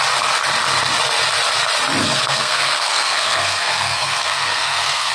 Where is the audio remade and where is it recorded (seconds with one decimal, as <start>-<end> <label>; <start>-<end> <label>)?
0.0-2.0 recorded; 2.0-5.1 remade